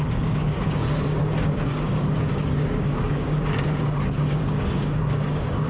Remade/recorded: remade